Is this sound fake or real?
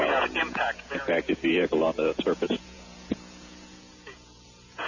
fake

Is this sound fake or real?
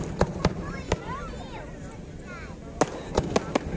real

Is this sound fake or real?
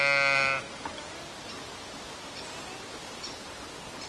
real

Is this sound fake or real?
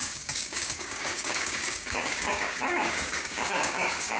fake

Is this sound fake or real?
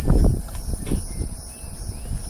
real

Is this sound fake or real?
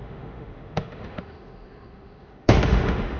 fake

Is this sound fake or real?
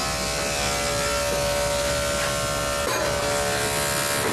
real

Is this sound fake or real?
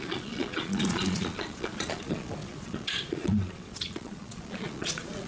fake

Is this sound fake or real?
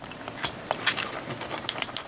real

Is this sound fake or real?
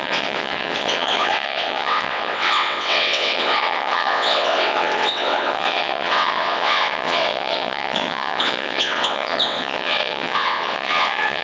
fake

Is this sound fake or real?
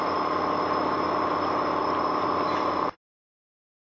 real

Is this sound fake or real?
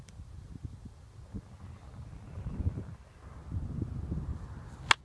real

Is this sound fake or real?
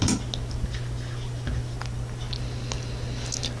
real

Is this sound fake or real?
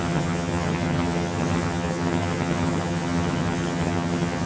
fake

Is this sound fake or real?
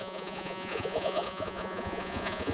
fake